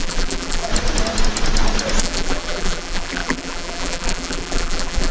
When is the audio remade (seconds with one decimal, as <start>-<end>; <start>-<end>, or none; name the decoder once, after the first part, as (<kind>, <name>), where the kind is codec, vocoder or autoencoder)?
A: 0.0-0.7 (vocoder, BigVGAN v2); 2.0-5.1